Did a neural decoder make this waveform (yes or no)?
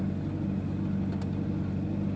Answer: no